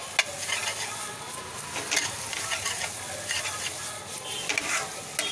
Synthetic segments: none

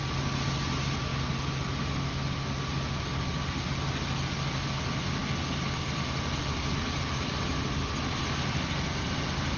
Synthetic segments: none

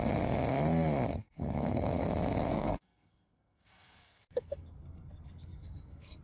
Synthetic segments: 1.1-2.1 (codec, SNAC); 2.5-6.2

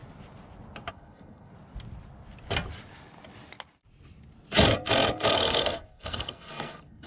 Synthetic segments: 0.9-1.5 (codec, SNAC); 5.3-7.1

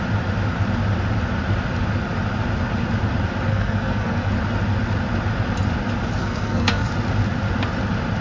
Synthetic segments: 3.5-4.3 (codec, SNAC); 6.2-6.9

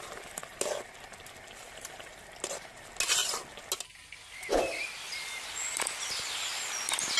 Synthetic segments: none

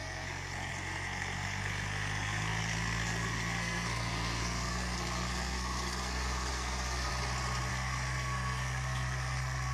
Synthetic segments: 0.0-7.1 (codec, SNAC); 7.7-9.7